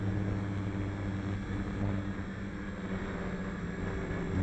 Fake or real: real